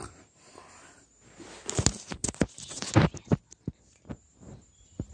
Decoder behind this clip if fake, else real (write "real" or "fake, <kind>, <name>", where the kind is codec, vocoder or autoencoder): real